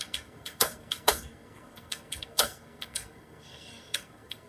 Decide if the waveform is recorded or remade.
remade